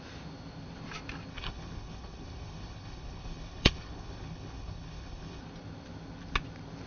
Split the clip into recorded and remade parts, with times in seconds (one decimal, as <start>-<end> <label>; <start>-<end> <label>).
0.0-1.3 recorded; 1.3-5.4 remade; 5.4-6.9 recorded

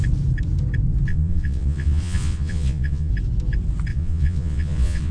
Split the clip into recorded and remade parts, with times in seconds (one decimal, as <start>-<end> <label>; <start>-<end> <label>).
0.0-1.1 recorded; 1.1-3.1 remade; 3.1-3.9 recorded; 3.9-5.1 remade

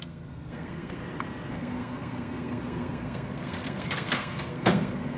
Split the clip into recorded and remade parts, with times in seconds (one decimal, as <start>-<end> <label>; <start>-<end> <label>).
0.0-1.0 remade; 1.0-1.5 recorded; 1.5-5.2 remade

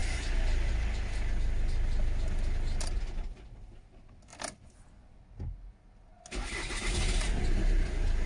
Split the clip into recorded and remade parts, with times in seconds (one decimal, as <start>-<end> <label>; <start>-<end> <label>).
0.0-8.3 recorded

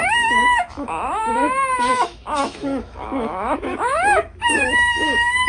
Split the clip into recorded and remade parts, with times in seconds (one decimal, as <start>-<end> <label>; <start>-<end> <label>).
0.0-5.5 remade

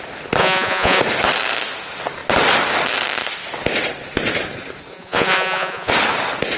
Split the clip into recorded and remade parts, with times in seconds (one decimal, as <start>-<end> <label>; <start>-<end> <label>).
0.0-0.4 recorded; 0.4-1.0 remade; 1.0-4.9 recorded; 4.9-5.9 remade; 5.9-6.6 recorded

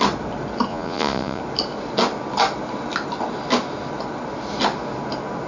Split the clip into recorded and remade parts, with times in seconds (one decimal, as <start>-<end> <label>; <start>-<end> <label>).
0.0-0.7 recorded; 0.7-1.4 remade; 1.4-5.5 recorded

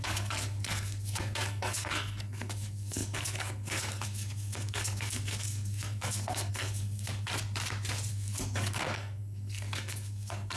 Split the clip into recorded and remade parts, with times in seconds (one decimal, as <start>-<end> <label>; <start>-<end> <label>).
0.0-7.3 remade; 7.3-8.1 recorded; 8.1-10.6 remade